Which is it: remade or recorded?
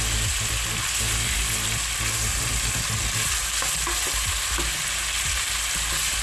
recorded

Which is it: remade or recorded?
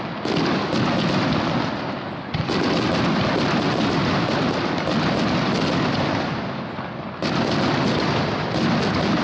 recorded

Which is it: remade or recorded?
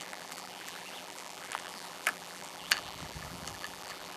remade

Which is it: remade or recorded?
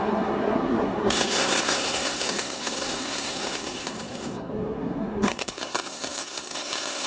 remade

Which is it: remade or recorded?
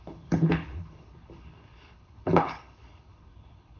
remade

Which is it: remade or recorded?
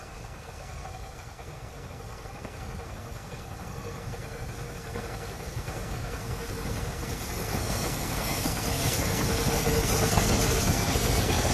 remade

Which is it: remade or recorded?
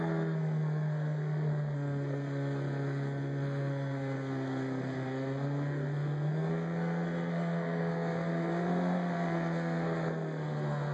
remade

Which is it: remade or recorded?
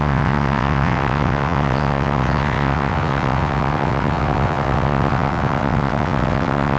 remade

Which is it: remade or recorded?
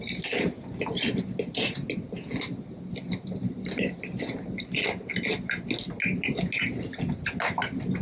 recorded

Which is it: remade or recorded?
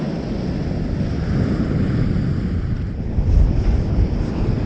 recorded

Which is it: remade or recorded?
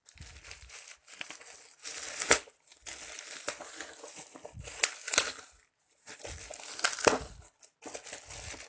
recorded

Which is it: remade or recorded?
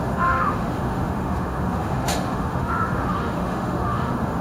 remade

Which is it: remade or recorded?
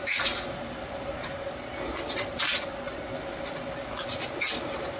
recorded